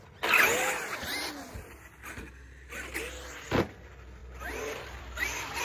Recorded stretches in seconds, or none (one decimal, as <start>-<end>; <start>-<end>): 0.0-5.6